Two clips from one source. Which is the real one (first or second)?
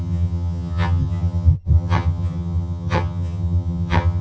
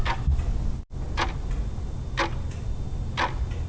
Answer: second